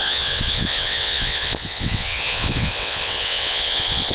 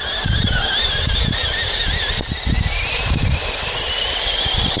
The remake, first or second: first